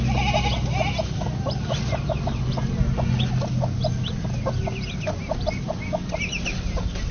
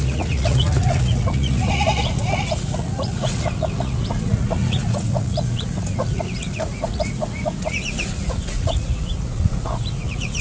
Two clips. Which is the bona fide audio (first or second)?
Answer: first